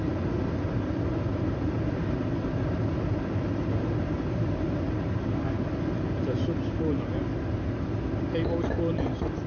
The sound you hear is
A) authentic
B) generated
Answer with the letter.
A